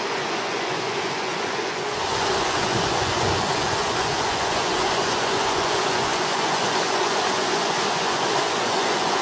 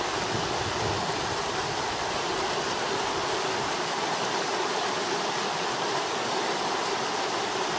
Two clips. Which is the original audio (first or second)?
second